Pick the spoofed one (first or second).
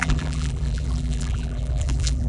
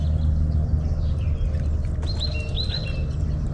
first